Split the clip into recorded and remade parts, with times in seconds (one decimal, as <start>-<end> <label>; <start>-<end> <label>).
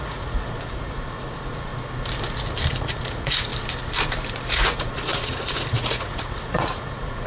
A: 0.0-1.7 remade; 1.7-2.7 recorded; 2.7-3.5 remade; 3.5-4.3 recorded; 4.3-7.3 remade